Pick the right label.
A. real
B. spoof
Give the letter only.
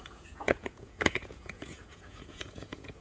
B